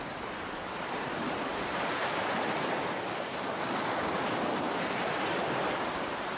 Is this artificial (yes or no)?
yes